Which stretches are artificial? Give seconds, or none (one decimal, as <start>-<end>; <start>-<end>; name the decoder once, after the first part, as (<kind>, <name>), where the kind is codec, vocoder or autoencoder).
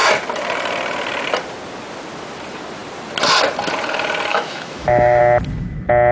4.3-5.2 (autoencoder, DAC-VAE)